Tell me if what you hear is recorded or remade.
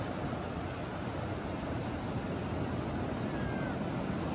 recorded